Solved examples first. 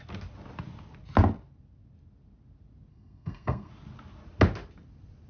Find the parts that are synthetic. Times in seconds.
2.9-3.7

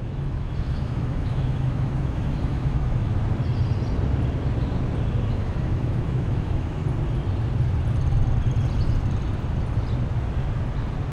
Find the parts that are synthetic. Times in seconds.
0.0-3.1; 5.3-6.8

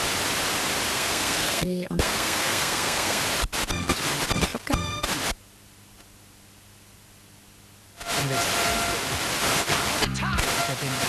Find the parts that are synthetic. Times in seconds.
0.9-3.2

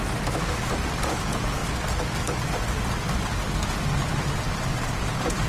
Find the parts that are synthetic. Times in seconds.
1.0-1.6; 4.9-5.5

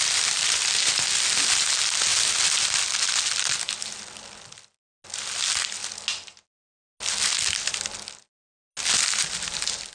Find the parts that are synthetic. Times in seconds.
none

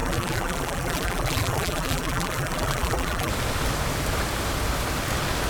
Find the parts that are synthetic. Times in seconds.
0.0-3.3

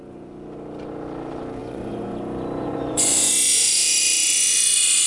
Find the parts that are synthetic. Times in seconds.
1.6-4.0

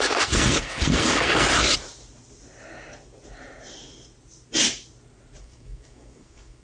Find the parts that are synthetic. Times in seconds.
0.0-1.5; 5.4-6.6